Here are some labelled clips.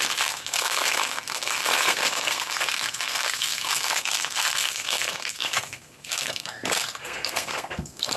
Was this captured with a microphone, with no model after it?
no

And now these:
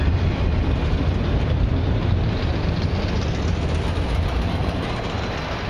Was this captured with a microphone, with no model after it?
yes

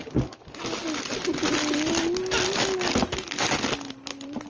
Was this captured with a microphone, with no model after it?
yes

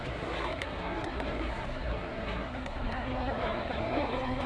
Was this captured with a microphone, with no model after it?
no